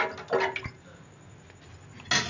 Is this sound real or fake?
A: real